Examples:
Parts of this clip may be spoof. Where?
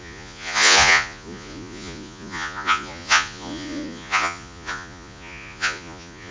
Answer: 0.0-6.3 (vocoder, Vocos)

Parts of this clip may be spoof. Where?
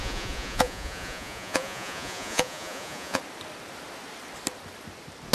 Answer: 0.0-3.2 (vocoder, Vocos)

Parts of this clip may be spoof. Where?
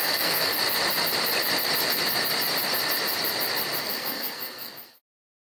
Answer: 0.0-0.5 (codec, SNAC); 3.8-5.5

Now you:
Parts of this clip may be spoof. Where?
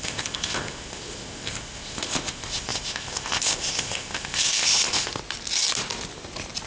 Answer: 0.0-5.1 (codec, ZipCodec)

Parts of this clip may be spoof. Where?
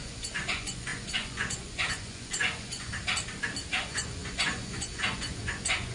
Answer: 0.0-2.9 (vocoder, Vocos); 3.7-5.9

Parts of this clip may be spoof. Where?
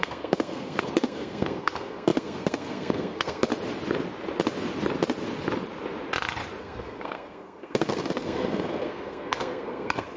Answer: 0.0-3.5 (codec, SNAC); 6.6-10.2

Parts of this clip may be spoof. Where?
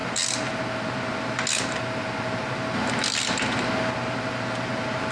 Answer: none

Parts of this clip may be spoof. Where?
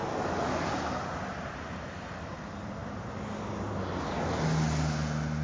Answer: none